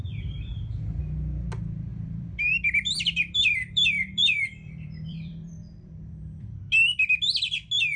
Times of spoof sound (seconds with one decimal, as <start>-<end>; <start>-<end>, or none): 0.0-1.0; 1.9-6.6